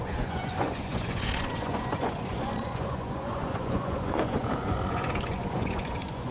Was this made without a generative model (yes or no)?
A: no